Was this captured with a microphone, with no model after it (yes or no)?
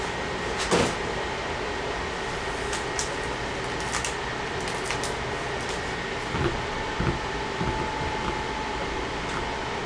yes